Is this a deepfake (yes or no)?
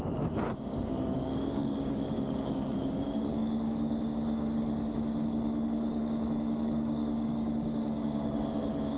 yes